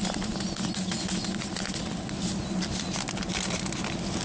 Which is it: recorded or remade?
recorded